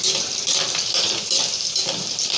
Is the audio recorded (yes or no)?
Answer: no